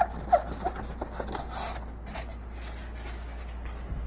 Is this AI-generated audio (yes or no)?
no